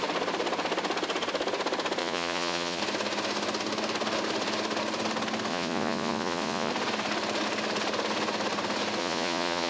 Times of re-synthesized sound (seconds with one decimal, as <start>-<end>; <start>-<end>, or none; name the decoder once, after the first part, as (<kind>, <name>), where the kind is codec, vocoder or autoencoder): 2.0-2.8 (vocoder, Vocos); 5.5-6.7; 9.0-9.7